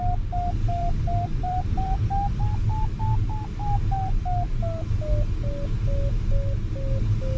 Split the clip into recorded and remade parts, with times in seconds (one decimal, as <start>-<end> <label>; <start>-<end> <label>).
0.0-0.8 recorded; 0.8-2.4 remade; 2.4-7.4 recorded